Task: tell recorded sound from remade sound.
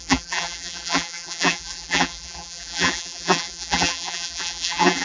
remade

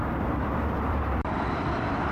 remade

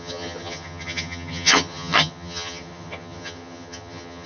remade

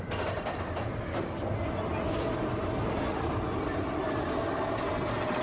recorded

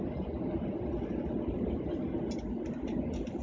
recorded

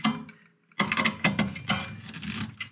recorded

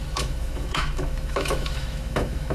remade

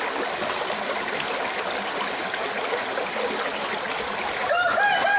recorded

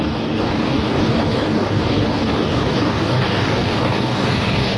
remade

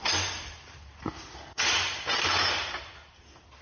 recorded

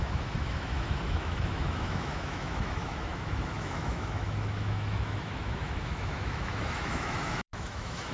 remade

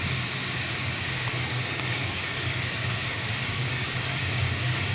remade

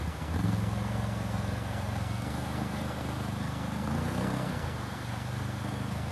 remade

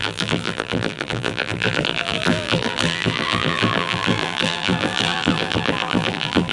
remade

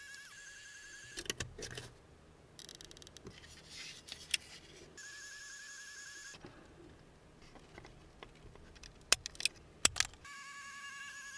recorded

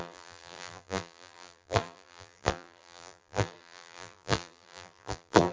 remade